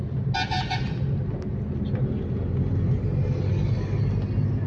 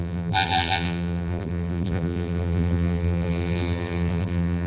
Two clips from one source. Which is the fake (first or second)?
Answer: second